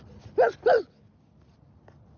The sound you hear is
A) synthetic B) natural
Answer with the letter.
B